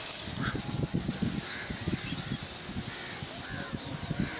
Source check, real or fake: real